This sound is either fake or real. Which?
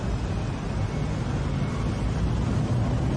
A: real